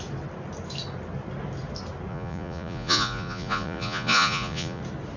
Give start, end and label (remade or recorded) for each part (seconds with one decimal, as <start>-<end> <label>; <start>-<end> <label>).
0.0-2.1 recorded; 2.1-4.8 remade; 4.8-5.2 recorded